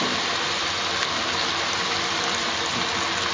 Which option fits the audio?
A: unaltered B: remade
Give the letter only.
A